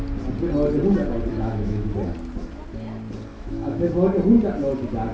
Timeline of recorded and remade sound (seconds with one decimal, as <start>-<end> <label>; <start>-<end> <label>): 0.0-1.3 recorded; 1.3-1.9 remade; 1.9-3.3 recorded; 3.3-3.9 remade; 3.9-5.1 recorded